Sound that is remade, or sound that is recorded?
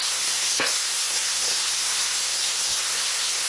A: remade